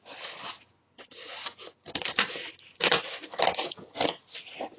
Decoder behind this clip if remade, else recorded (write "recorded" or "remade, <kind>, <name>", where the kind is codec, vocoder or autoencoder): recorded